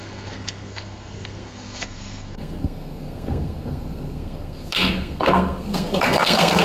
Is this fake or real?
fake